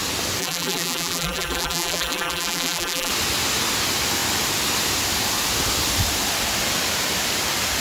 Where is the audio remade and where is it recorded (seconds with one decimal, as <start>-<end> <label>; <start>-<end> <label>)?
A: 0.0-0.4 recorded; 0.4-3.1 remade; 3.1-7.8 recorded